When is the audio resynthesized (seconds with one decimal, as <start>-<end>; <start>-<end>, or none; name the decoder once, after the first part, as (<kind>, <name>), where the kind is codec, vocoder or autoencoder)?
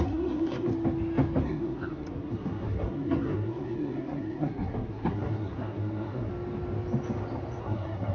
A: 0.0-0.7 (codec, SNAC); 1.4-6.3; 7.6-8.1